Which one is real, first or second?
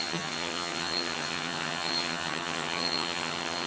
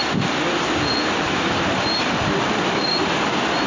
second